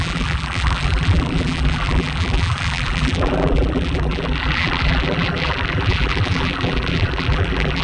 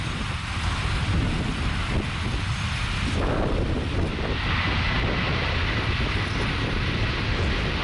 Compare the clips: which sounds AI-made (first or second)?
first